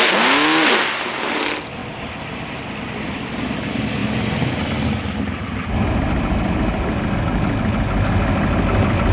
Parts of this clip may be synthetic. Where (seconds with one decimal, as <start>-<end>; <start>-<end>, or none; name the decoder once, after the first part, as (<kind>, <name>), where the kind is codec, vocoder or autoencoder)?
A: none